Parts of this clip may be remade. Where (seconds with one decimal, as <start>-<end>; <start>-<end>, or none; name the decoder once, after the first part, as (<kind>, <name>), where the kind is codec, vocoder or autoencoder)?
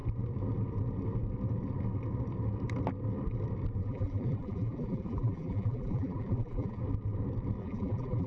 3.8-6.8 (vocoder, BigVGAN v2); 7.6-8.3